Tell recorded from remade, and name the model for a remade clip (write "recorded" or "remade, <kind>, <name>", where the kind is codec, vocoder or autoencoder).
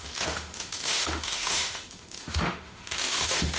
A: remade, autoencoder, DAC-VAE